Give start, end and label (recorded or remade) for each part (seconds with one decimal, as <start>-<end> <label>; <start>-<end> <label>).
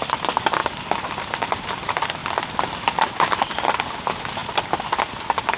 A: 0.0-0.6 recorded; 0.6-1.7 remade; 1.7-2.2 recorded; 2.2-3.0 remade; 3.0-4.4 recorded; 4.4-5.0 remade; 5.0-5.6 recorded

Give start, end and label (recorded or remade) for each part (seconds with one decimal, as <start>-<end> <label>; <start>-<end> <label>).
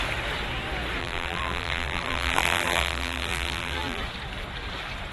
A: 0.0-1.0 recorded; 1.0-4.0 remade; 4.0-5.1 recorded